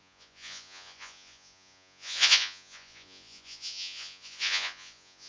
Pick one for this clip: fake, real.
fake